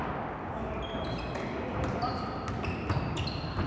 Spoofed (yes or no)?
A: no